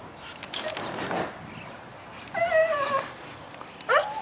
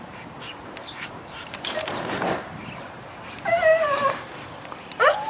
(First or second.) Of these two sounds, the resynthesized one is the second